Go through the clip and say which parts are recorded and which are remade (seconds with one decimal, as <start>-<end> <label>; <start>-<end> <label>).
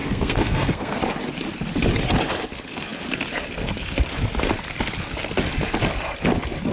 0.0-1.0 remade; 1.0-6.7 recorded